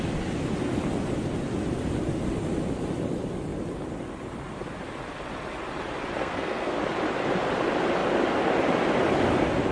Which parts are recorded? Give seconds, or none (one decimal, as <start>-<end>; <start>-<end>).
0.0-6.2; 6.8-9.7

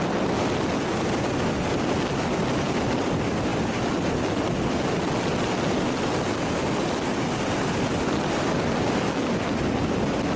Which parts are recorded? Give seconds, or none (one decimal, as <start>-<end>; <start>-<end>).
0.0-10.4